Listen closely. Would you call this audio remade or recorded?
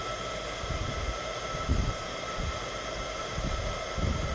remade